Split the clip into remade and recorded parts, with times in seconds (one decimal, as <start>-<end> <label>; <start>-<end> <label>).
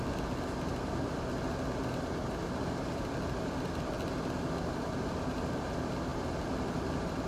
0.0-7.3 recorded